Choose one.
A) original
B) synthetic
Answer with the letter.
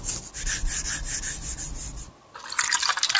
A